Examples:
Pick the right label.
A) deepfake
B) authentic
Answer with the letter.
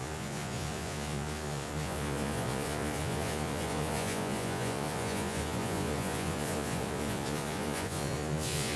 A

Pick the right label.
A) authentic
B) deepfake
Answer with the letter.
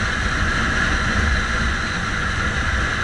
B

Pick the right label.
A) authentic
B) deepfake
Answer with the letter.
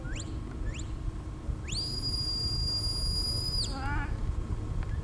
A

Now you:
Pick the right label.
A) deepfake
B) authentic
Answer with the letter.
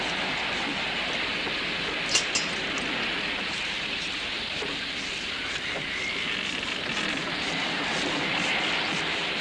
B